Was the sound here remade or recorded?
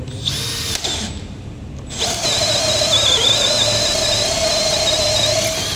recorded